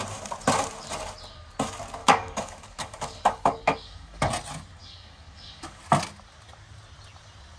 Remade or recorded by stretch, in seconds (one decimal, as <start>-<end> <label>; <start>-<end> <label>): 0.0-2.0 recorded; 2.0-4.3 remade; 4.3-4.8 recorded; 4.8-5.8 remade; 5.8-7.6 recorded